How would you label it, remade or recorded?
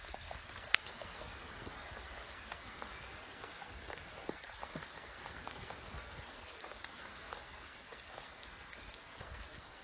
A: remade